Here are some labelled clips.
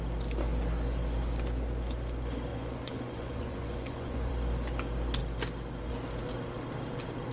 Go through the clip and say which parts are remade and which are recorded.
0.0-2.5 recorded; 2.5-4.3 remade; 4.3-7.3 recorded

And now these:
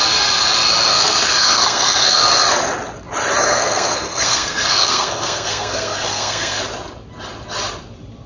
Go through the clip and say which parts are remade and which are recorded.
0.0-0.9 recorded; 0.9-2.2 remade; 2.2-3.4 recorded; 3.4-6.6 remade; 6.6-8.3 recorded

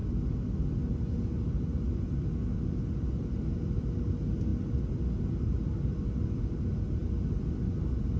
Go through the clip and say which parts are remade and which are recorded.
0.0-8.2 recorded

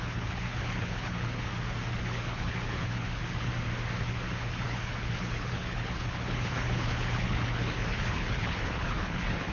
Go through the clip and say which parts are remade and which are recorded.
0.0-1.5 remade; 1.5-2.0 recorded; 2.0-3.5 remade; 3.5-4.0 recorded; 4.0-9.5 remade

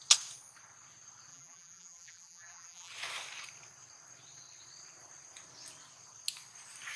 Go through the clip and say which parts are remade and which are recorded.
0.0-1.3 recorded; 1.3-2.9 remade; 2.9-7.0 recorded

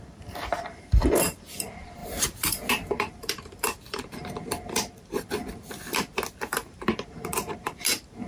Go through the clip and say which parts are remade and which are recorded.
0.0-5.4 remade; 5.4-6.3 recorded; 6.3-8.3 remade

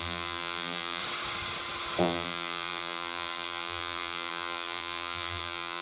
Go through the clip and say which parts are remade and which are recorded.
0.0-1.0 remade; 1.0-2.0 recorded; 2.0-5.8 remade

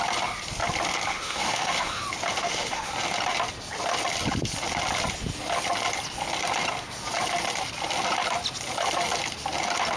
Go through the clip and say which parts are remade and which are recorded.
0.0-1.1 recorded; 1.1-2.0 remade; 2.0-2.4 recorded; 2.4-2.9 remade; 2.9-10.0 recorded